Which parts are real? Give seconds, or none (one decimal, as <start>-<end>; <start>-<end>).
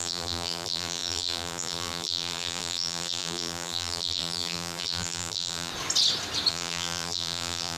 5.7-6.5